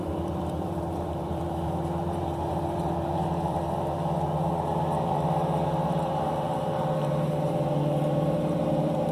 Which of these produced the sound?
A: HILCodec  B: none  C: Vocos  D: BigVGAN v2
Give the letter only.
D